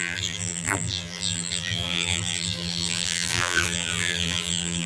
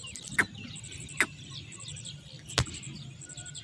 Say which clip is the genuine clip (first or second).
second